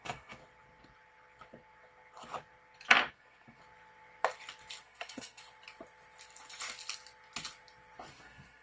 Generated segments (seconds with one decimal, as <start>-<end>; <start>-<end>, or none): 0.0-0.4; 3.1-3.6; 4.8-5.4; 8.1-8.6